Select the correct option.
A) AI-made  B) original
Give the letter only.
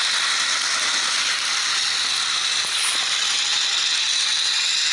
B